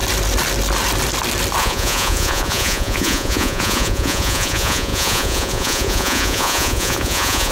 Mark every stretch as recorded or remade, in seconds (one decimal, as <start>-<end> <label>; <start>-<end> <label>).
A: 0.0-1.6 recorded; 1.6-7.5 remade